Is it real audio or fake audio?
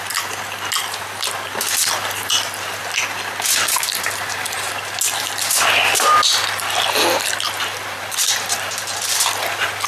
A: real